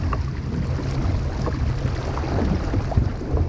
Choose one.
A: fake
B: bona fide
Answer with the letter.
B